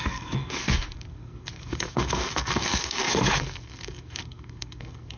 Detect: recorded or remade remade